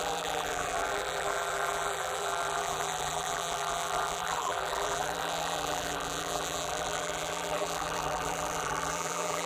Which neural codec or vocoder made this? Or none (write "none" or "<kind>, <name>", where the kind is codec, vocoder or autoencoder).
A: vocoder, BigVGAN v2